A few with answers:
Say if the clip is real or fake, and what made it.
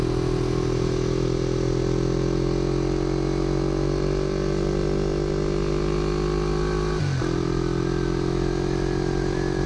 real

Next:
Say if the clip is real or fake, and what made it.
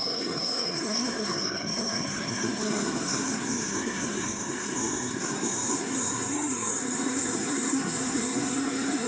fake, codec, SNAC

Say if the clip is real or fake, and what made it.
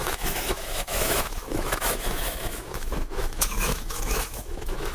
fake, autoencoder, DAC-VAE